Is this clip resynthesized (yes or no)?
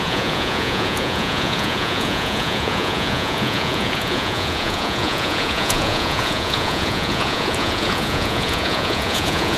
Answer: yes